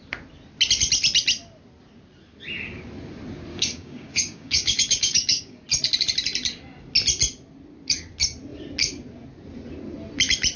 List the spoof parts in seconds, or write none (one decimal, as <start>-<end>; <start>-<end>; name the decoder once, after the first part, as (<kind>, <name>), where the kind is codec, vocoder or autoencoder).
3.5-5.6 (codec, DAC)